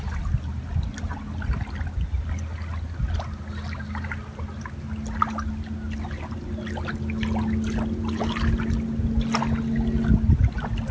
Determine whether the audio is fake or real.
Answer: real